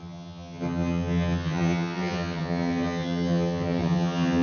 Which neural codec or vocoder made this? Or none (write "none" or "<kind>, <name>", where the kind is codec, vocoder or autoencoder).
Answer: vocoder, HiFi-GAN